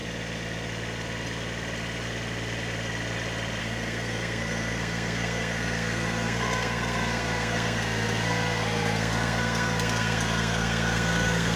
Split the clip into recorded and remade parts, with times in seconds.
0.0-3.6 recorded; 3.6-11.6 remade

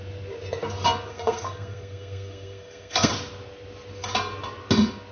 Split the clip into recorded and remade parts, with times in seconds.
0.0-1.1 recorded; 1.1-3.1 remade; 3.1-5.1 recorded